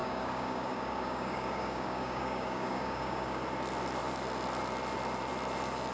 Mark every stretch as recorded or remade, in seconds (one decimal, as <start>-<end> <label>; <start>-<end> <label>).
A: 0.0-3.4 remade; 3.4-5.9 recorded